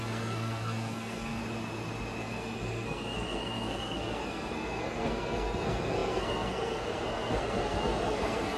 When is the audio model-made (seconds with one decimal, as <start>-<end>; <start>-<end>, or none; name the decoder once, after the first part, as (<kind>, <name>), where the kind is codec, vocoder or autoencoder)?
0.0-1.4 (codec, SNAC); 2.2-8.6

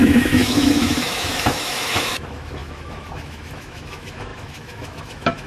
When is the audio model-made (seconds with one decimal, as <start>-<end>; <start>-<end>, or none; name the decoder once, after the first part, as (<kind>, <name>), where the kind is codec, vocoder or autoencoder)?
0.0-5.5 (autoencoder, DAC-VAE)

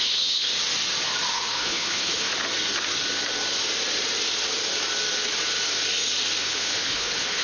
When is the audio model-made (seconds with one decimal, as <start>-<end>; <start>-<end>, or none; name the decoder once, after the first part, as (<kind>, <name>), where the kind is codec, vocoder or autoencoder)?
0.0-0.5 (codec, HILCodec); 1.3-2.3; 6.4-7.4

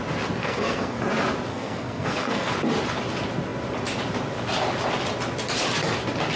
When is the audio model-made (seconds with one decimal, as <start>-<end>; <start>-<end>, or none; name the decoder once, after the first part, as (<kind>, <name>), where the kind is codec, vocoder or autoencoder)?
0.4-1.0 (codec, SNAC); 1.5-2.5

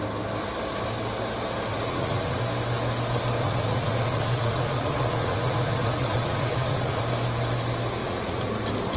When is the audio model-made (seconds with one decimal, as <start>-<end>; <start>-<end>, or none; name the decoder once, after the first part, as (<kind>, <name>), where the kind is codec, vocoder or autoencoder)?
1.7-2.4 (vocoder, Vocos); 3.4-7.0; 8.0-8.5

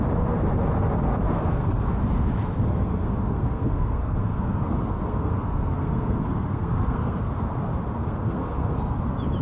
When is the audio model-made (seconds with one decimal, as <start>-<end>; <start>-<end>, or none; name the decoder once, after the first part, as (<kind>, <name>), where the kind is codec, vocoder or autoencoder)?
1.1-1.9 (codec, SNAC); 2.5-7.3; 8.0-9.0

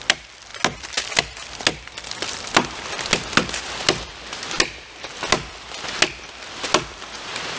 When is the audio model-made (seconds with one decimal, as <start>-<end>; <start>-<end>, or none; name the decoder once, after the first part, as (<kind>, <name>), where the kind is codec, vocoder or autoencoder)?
none

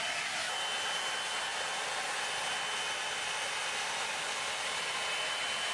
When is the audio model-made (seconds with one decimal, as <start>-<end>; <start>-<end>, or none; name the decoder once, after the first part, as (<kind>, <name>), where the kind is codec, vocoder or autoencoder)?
none